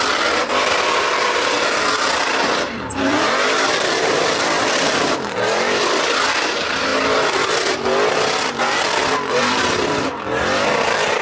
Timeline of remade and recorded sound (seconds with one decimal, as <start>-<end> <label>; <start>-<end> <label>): 0.0-6.9 remade; 6.9-9.4 recorded; 9.4-11.2 remade